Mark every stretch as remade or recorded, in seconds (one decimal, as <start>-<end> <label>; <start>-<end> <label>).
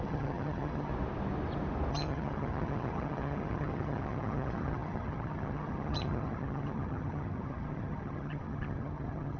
0.0-0.9 remade; 0.9-1.9 recorded; 1.9-9.4 remade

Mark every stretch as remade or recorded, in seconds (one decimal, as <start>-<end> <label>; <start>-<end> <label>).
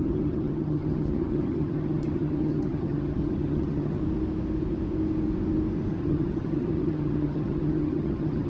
0.0-4.0 remade; 4.0-5.9 recorded; 5.9-8.5 remade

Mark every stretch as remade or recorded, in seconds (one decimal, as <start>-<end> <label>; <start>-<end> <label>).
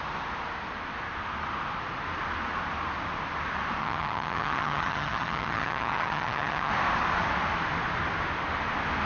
0.0-3.8 recorded; 3.8-6.7 remade; 6.7-9.1 recorded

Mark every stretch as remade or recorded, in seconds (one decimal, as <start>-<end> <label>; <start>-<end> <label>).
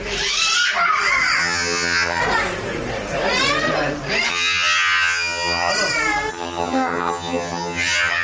0.0-1.4 recorded; 1.4-2.2 remade; 2.2-4.3 recorded; 4.3-5.7 remade; 5.7-6.3 recorded; 6.3-8.2 remade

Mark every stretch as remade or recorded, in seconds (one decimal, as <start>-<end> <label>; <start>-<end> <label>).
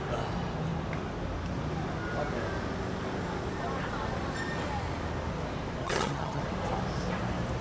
0.0-5.8 recorded; 5.8-6.4 remade; 6.4-7.6 recorded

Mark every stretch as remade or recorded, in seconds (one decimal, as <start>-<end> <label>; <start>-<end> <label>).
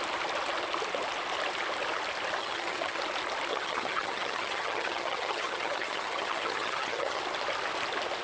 0.0-2.4 recorded; 2.4-3.0 remade; 3.0-3.5 recorded; 3.5-7.2 remade; 7.2-8.2 recorded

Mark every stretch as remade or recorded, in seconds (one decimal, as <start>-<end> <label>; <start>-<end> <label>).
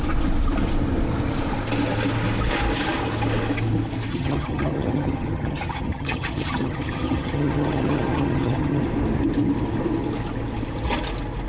0.0-4.1 recorded; 4.1-8.8 remade; 8.8-11.5 recorded